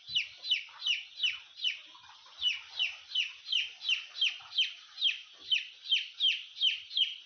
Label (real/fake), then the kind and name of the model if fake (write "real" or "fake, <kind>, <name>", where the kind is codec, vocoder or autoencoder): real